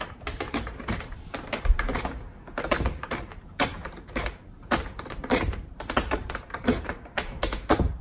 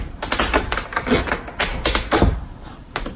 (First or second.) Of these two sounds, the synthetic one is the first